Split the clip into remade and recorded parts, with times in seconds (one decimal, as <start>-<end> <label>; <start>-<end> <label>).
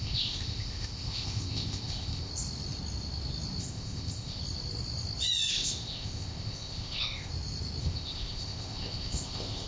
0.0-2.3 remade; 2.3-3.6 recorded; 3.6-4.4 remade; 4.4-5.5 recorded; 5.5-7.3 remade; 7.3-7.8 recorded; 7.8-9.7 remade